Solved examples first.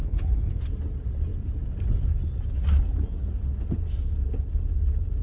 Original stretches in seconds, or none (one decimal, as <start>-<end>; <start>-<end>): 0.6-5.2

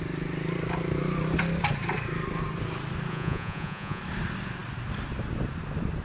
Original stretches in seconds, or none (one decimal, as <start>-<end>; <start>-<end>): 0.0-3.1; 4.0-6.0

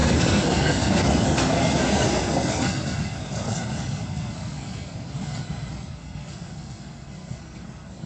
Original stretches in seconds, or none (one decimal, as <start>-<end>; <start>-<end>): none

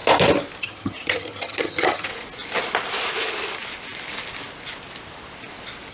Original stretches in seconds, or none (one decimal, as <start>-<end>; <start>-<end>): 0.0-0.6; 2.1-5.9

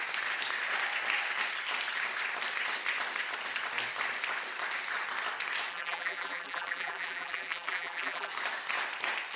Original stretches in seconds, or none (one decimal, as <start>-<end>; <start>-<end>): 0.0-5.7; 8.3-9.4

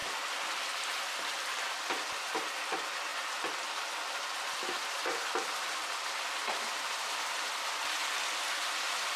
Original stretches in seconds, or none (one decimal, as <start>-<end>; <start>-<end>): 2.2-9.2

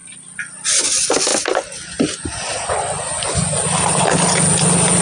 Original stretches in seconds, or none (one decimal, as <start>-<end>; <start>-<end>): 0.0-5.0